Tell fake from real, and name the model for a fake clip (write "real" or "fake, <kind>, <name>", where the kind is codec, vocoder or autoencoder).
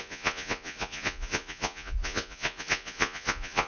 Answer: fake, vocoder, Vocos